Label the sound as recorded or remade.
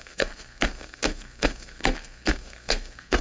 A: remade